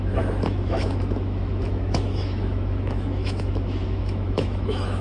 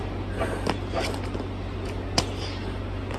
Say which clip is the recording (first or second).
second